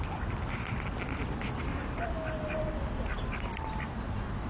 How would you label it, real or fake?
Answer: real